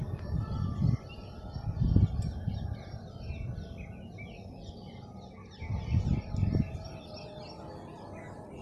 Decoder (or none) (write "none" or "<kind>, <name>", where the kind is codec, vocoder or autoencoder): none